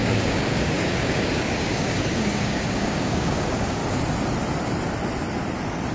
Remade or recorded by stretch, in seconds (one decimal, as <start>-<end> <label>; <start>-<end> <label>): 0.0-3.8 remade; 3.8-5.9 recorded